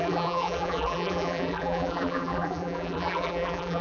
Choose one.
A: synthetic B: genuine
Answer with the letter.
A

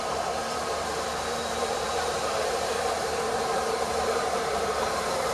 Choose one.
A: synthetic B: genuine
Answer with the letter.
A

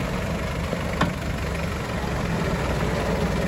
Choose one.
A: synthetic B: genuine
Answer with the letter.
B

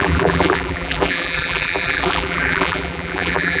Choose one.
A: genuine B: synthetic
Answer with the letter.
B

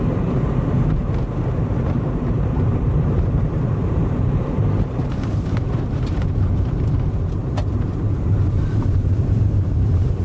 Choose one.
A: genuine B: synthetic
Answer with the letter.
B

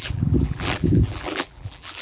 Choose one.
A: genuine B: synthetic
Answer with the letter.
B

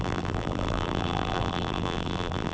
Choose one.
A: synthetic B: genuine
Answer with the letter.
A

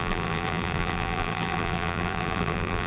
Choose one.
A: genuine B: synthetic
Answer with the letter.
B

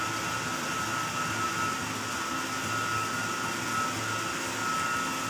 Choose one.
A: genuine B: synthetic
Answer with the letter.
A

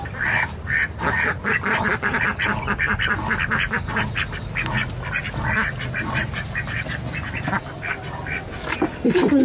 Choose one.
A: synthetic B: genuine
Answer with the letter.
B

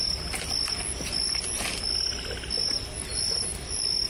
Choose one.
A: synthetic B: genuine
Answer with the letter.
B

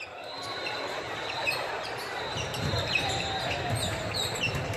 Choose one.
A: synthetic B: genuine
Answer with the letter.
A